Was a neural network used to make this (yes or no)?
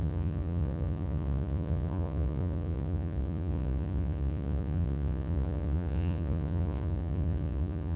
yes